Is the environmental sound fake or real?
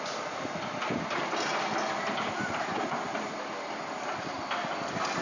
real